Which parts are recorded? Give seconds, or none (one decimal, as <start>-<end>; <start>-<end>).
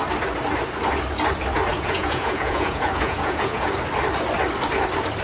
0.0-1.7; 3.7-5.2